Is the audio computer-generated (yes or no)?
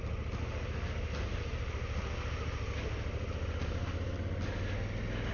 no